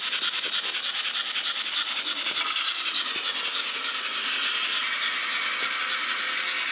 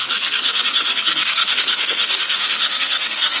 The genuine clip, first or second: first